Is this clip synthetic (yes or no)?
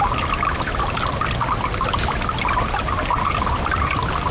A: no